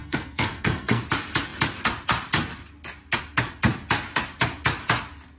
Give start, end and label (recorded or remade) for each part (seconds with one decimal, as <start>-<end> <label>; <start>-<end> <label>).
0.0-1.0 remade; 1.0-5.4 recorded